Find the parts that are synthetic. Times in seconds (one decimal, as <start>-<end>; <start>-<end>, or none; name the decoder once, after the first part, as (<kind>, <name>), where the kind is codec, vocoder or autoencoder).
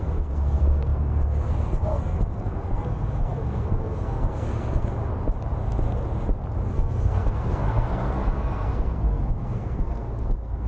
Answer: 0.0-5.0 (codec, SNAC); 6.7-10.7